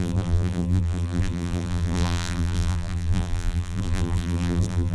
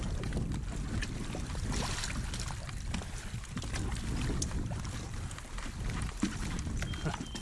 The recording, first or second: second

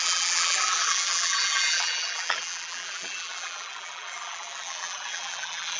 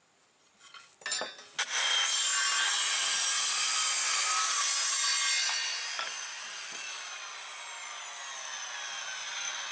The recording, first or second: second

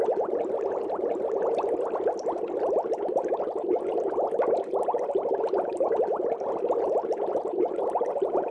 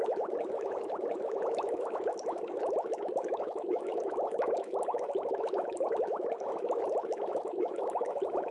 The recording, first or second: first